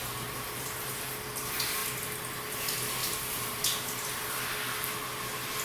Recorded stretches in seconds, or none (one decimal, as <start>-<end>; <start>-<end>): 1.1-3.0; 3.6-5.6